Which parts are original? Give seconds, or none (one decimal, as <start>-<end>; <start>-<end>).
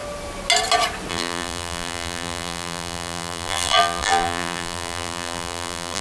0.0-1.1